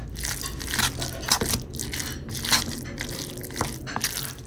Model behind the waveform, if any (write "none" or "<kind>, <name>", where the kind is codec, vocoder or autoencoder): none